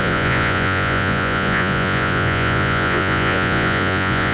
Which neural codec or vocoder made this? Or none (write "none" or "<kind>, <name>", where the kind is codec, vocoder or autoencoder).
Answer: vocoder, Vocos